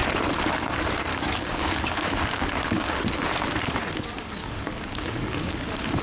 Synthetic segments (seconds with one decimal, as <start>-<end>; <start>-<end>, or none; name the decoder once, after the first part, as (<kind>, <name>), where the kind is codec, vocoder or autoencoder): 1.1-3.2 (codec, DAC); 4.4-5.6